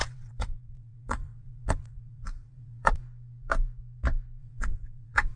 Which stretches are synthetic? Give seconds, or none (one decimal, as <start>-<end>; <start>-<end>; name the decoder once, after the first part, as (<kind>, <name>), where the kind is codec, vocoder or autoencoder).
0.0-3.0 (vocoder, WaveNeXt); 4.4-5.4